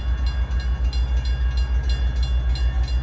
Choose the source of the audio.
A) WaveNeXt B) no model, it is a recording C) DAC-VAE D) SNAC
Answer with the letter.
B